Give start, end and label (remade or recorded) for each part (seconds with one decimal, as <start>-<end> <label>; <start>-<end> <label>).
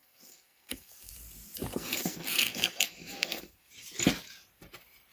0.0-1.1 remade; 1.1-1.7 recorded; 1.7-3.7 remade; 3.7-5.1 recorded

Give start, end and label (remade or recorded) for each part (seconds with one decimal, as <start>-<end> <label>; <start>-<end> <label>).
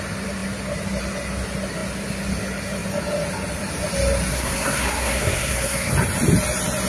0.0-4.3 recorded; 4.3-5.9 remade; 5.9-6.9 recorded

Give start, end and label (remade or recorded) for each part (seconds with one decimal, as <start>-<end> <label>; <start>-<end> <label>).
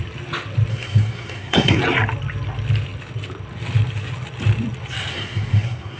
0.0-0.7 recorded; 0.7-1.8 remade; 1.8-5.1 recorded; 5.1-6.0 remade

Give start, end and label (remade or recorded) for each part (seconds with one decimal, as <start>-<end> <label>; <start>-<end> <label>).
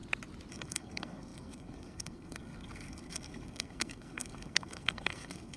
0.0-0.5 recorded; 0.5-5.6 remade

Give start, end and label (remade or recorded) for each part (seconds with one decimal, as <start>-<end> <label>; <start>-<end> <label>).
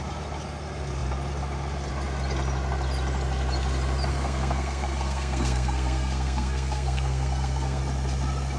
0.0-4.1 recorded; 4.1-7.8 remade; 7.8-8.6 recorded